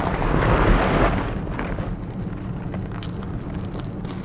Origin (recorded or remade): recorded